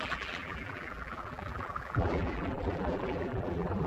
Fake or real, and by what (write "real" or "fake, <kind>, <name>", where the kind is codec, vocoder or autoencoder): fake, vocoder, BigVGAN v2